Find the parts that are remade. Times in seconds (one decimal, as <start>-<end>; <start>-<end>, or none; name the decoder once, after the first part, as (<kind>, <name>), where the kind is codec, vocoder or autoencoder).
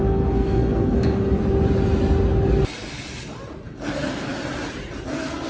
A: 0.0-1.4 (codec, SNAC); 3.6-4.3; 5.1-5.5